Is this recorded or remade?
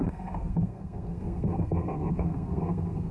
remade